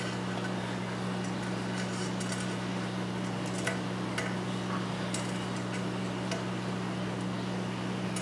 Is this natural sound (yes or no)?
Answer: yes